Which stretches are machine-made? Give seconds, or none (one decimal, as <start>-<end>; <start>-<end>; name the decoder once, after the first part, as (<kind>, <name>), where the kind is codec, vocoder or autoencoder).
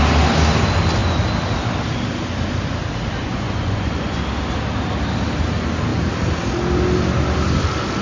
3.2-4.2 (vocoder, Vocos)